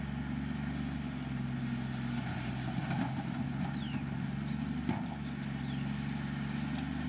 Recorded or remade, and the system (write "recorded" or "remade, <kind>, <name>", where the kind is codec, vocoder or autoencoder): recorded